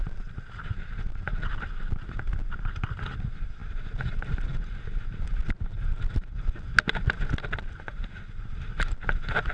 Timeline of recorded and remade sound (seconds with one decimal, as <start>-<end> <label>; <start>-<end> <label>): 0.0-9.5 recorded